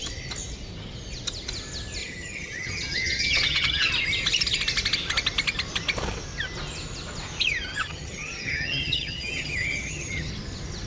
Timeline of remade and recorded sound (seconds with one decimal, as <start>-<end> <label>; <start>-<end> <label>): 0.0-2.0 recorded; 2.0-3.9 remade; 3.9-7.7 recorded; 7.7-10.3 remade; 10.3-10.9 recorded